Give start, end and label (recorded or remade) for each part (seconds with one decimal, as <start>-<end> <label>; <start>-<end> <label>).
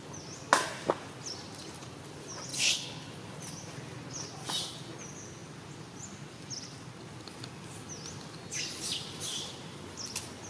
0.0-2.5 recorded; 2.5-3.1 remade; 3.1-10.5 recorded